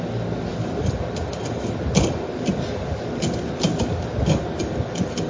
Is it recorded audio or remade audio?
recorded